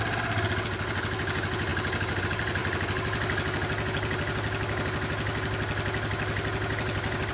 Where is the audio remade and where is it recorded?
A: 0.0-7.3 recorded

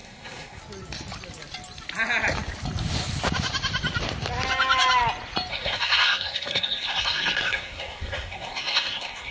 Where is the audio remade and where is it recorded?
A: 0.0-0.6 remade; 0.6-5.5 recorded; 5.5-9.3 remade